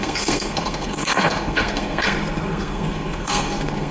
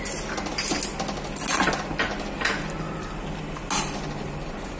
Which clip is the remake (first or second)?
first